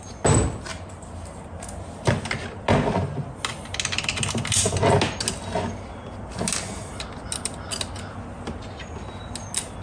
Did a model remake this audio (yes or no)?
no